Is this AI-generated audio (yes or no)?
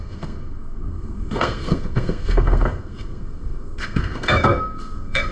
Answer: yes